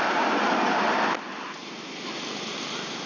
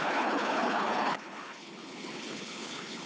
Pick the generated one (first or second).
second